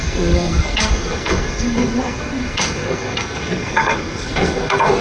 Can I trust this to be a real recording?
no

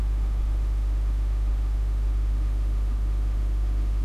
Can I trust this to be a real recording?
no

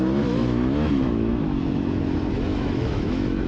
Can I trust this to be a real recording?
no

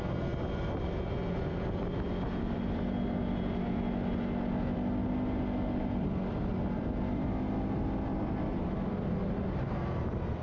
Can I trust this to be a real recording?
yes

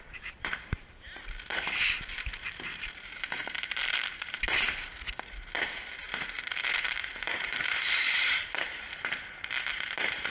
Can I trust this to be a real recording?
no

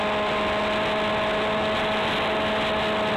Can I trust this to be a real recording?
yes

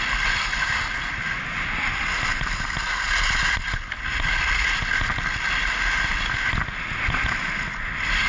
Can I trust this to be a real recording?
yes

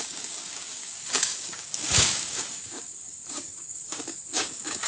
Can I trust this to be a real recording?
no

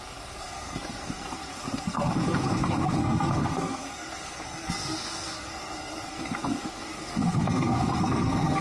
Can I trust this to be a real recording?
no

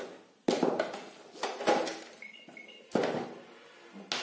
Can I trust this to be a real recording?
yes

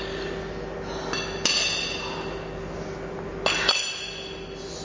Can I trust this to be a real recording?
yes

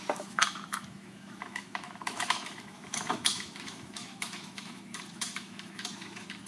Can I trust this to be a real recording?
no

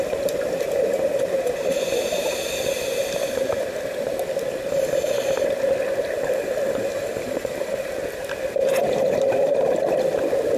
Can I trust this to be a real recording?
yes